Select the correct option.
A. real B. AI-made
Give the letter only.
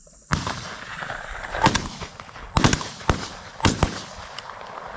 A